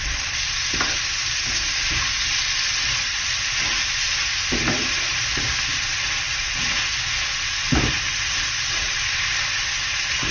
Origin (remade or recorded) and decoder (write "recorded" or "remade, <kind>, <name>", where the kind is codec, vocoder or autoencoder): recorded